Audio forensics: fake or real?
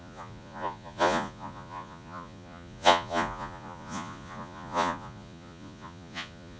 fake